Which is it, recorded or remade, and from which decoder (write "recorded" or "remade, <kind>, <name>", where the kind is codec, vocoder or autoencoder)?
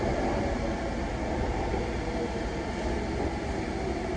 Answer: recorded